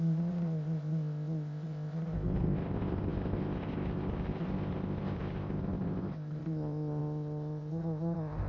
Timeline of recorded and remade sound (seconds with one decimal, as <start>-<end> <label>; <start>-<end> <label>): 0.0-8.5 remade